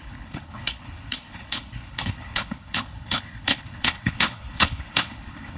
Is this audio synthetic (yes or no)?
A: yes